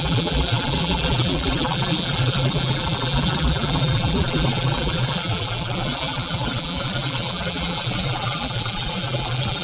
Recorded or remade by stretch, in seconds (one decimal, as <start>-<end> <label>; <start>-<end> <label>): 0.0-9.6 remade